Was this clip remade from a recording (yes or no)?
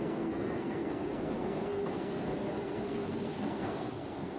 yes